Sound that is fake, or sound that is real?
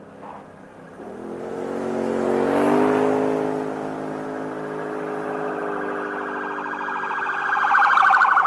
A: real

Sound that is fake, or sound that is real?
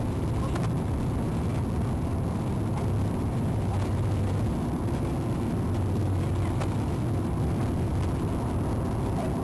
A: real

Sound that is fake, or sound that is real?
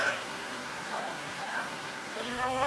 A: fake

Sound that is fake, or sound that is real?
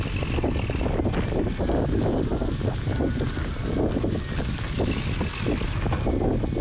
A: real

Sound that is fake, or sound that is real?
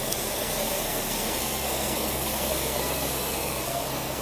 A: fake